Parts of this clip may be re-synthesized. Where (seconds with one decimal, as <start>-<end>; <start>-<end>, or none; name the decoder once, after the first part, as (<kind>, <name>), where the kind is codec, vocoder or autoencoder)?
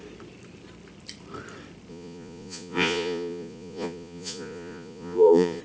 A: 1.9-5.6 (vocoder, Vocos)